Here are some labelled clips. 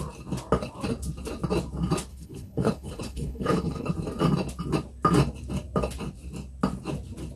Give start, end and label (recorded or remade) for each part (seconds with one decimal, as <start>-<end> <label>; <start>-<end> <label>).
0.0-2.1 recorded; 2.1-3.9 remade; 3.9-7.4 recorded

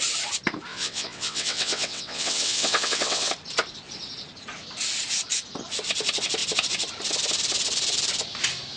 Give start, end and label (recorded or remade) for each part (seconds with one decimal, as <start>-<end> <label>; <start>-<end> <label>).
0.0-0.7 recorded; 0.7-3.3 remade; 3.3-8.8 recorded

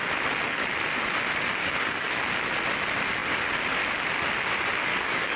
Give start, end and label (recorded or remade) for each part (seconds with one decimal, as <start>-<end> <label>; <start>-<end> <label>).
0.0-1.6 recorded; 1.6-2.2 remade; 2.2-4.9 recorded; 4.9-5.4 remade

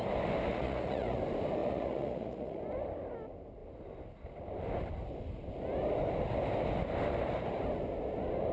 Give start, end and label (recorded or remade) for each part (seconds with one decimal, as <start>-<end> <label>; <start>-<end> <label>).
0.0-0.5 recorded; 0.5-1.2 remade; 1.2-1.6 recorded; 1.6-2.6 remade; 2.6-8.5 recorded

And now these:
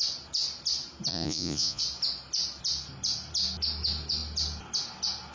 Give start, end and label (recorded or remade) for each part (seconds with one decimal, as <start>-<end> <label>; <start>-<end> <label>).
0.0-1.1 recorded; 1.1-1.8 remade; 1.8-5.3 recorded

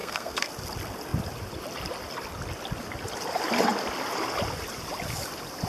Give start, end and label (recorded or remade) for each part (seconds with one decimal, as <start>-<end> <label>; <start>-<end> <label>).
0.0-0.5 remade; 0.5-5.7 recorded

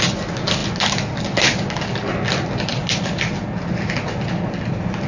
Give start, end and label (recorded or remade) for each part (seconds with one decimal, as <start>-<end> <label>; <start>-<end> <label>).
0.0-5.1 recorded